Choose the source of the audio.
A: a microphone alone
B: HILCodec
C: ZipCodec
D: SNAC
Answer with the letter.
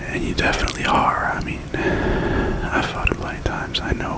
A